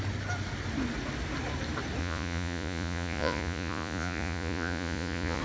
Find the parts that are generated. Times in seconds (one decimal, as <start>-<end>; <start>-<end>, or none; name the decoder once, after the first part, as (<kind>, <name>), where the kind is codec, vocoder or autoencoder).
2.0-5.4 (vocoder, Vocos)